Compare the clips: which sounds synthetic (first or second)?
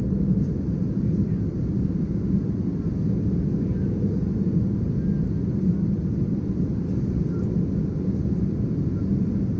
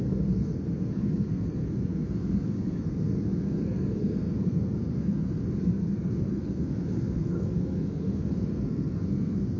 second